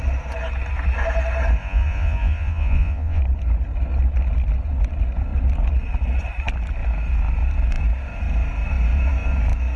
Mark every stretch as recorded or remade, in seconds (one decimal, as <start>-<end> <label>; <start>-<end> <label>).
0.0-1.6 recorded; 1.6-3.2 remade; 3.2-9.8 recorded